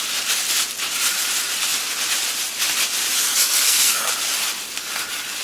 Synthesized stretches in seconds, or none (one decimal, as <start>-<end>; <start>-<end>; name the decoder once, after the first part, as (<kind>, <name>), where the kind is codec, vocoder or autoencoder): 3.3-4.1 (codec, SNAC)